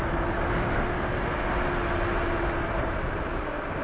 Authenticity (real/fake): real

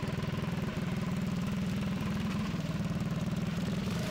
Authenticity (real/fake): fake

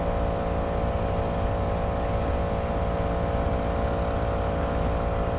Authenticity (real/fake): real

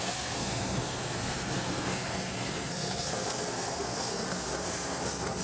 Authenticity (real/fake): fake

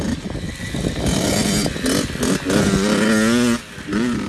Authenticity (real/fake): real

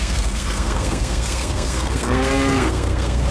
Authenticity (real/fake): fake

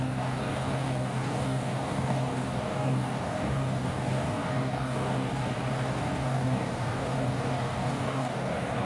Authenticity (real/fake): fake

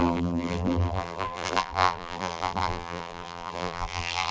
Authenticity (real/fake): fake